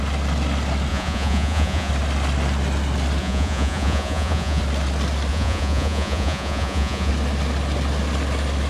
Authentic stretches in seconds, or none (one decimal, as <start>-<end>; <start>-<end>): 0.0-0.9; 1.9-3.2; 4.6-5.3; 7.1-8.7